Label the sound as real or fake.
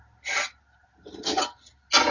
real